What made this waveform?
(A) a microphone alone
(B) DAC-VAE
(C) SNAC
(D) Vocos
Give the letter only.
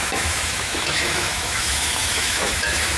B